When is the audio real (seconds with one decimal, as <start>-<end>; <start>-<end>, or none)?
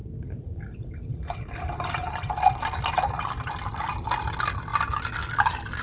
2.3-5.8